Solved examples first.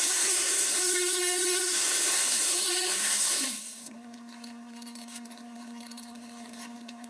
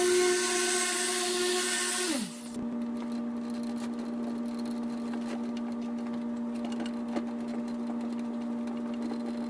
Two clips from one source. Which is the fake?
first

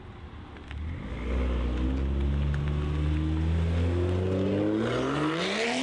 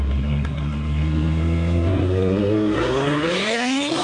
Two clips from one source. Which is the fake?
second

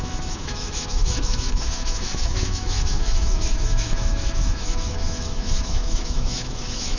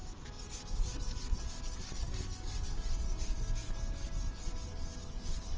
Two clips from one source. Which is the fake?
first